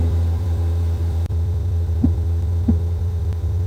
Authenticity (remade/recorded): remade